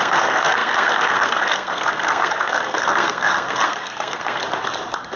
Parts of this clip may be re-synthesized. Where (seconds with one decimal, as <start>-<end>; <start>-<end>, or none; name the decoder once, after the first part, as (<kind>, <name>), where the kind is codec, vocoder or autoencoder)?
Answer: 0.0-4.4 (codec, SNAC)